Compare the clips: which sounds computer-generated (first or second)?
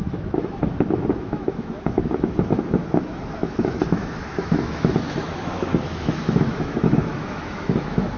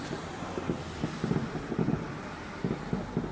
first